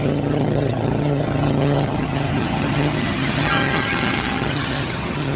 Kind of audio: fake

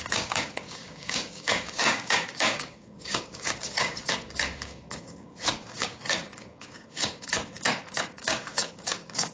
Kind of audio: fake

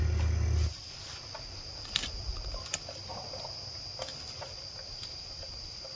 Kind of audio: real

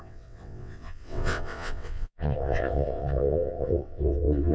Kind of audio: fake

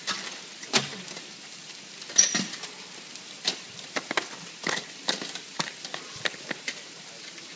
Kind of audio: real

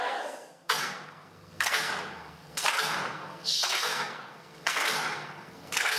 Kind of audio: fake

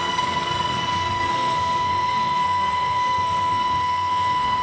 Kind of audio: fake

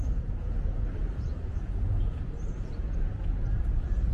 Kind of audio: fake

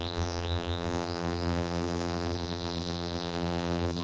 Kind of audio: fake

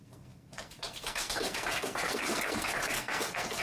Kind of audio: fake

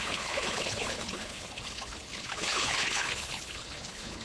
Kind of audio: fake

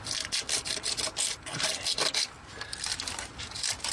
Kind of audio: real